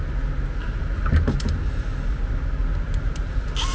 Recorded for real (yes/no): yes